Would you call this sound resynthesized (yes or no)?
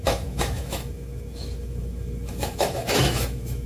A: yes